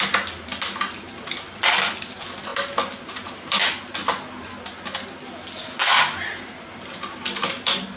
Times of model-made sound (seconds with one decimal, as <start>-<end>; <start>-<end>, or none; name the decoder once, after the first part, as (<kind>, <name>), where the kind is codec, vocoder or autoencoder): none